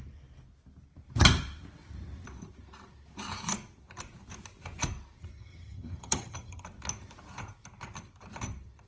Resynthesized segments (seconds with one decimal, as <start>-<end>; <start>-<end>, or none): 5.4-6.6